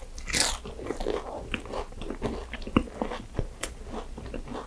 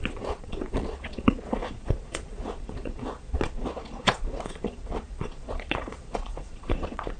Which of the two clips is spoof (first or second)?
second